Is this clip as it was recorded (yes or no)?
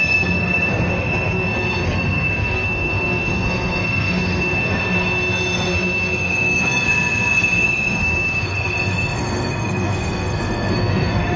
no